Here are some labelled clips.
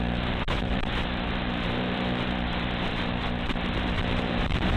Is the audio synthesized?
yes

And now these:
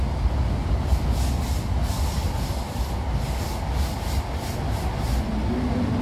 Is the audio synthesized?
no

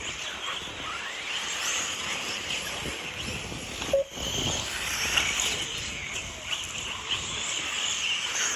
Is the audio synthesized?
no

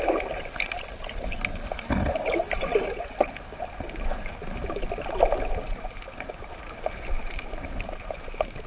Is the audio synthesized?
no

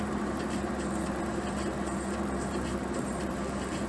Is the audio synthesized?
yes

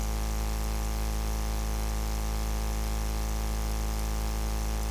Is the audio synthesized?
no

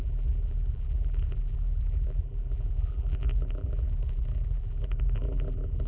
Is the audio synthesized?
yes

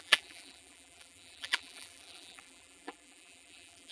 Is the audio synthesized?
yes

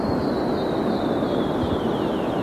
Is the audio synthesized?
yes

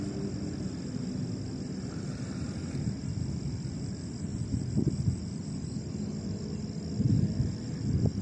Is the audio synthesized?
no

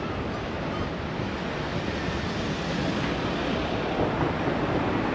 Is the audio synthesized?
no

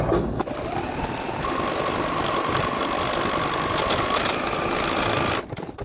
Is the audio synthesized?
no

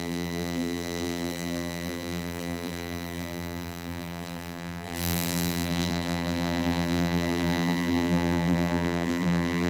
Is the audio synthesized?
yes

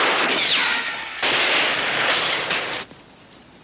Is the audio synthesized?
no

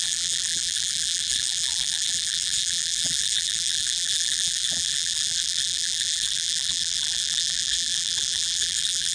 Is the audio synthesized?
yes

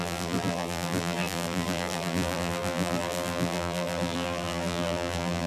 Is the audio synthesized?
yes